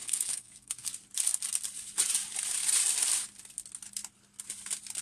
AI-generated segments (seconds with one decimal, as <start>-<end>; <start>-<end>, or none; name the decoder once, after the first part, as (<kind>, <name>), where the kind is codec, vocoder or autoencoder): 0.0-0.9 (codec, SNAC)